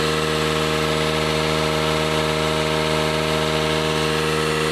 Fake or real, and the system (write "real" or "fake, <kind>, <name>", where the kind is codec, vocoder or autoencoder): real